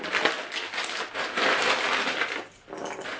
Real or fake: real